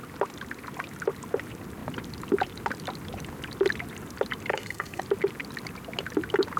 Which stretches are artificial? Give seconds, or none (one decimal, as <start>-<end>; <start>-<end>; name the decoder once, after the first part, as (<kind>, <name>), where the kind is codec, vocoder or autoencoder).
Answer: 4.5-5.0 (codec, SNAC)